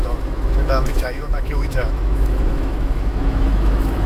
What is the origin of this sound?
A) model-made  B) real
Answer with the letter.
A